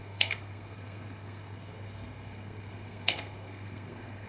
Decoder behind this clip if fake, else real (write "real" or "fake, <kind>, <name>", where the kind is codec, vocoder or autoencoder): fake, codec, SNAC